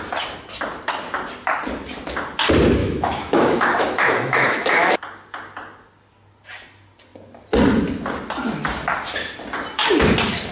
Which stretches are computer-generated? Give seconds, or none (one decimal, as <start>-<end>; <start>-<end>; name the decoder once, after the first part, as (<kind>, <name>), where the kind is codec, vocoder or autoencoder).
2.8-4.9 (autoencoder, DAC-VAE)